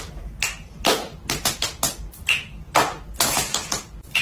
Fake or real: real